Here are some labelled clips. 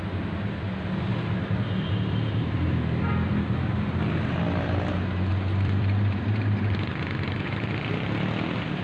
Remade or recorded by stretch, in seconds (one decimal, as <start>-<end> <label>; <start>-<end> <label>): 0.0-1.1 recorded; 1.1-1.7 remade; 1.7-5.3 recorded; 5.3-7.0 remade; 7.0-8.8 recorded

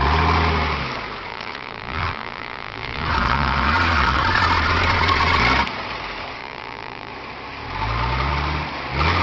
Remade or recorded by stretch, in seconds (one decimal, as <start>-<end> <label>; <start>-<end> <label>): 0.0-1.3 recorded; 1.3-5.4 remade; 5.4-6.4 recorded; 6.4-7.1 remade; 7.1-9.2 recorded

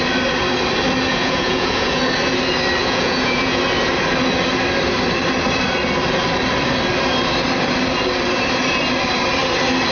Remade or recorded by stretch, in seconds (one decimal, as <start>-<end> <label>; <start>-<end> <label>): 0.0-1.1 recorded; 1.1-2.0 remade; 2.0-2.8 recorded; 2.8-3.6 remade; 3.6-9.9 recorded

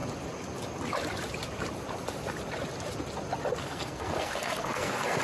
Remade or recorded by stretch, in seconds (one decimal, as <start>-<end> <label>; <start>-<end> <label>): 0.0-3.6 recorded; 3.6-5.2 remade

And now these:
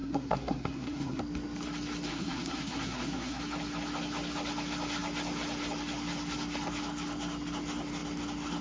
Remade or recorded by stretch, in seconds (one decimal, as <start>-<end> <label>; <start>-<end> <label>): 0.0-1.2 remade; 1.2-2.1 recorded; 2.1-3.4 remade; 3.4-8.6 recorded

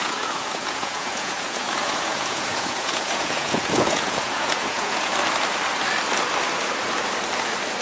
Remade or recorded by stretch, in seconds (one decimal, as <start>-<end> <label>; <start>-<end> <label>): 0.0-5.1 remade; 5.1-7.8 recorded

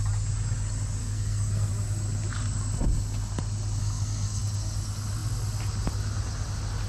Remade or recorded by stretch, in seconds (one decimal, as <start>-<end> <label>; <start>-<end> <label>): 0.0-1.0 recorded; 1.0-1.7 remade; 1.7-3.8 recorded; 3.8-4.4 remade; 4.4-6.9 recorded